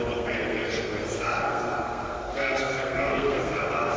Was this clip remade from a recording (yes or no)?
yes